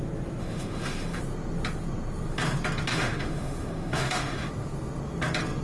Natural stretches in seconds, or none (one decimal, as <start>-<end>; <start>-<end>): 0.0-0.4; 1.2-2.9; 4.5-5.6